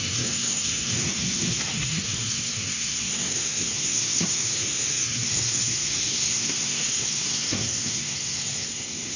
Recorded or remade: remade